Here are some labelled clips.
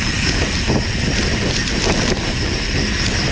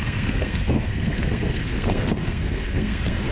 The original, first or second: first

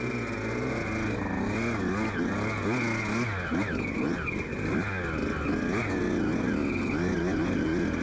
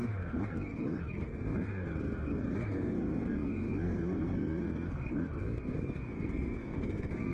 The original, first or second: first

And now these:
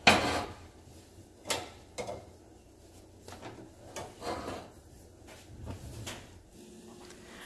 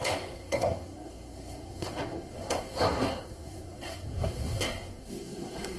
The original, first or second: first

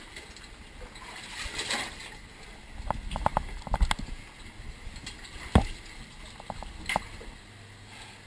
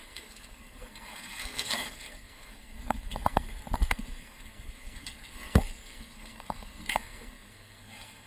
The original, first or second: first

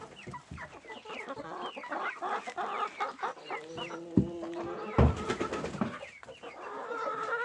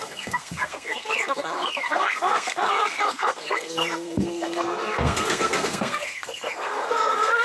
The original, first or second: first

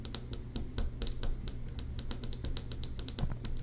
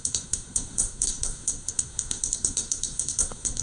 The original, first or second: first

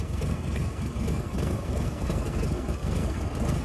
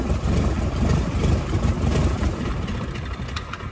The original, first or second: second